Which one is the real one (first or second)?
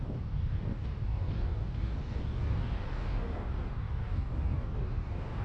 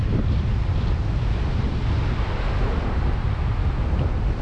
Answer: second